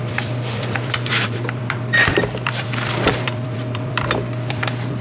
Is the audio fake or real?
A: fake